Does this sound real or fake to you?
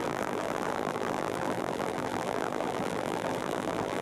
fake